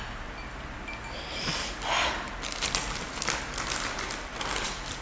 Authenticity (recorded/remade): recorded